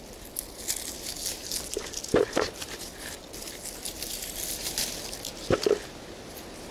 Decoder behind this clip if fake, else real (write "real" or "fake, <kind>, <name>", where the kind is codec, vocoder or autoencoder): real